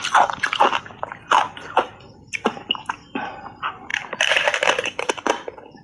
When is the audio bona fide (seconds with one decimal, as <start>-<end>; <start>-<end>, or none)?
0.0-3.9; 5.1-5.8

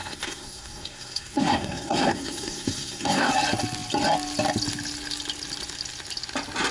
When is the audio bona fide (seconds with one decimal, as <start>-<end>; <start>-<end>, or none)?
3.3-6.7

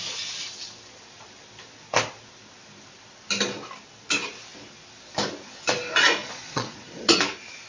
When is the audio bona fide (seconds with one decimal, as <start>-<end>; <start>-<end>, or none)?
0.0-6.2; 7.2-7.7

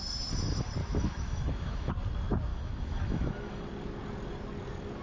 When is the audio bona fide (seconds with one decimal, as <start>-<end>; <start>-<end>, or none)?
0.0-0.8; 1.9-2.5; 3.7-5.0

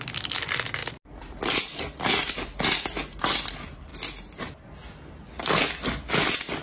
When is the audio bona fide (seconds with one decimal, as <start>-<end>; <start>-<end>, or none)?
0.0-6.6

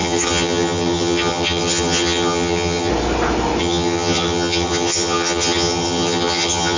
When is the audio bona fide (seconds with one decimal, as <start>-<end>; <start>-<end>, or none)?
2.9-3.6

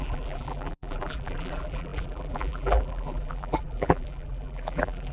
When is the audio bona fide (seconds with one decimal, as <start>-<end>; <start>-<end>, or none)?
none